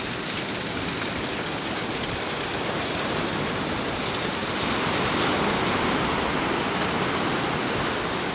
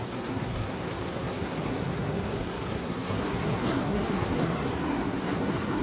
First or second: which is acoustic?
first